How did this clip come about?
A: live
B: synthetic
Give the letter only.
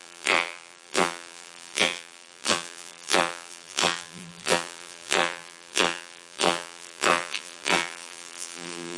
B